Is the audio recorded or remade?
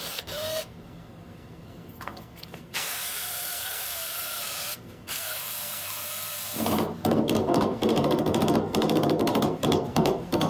remade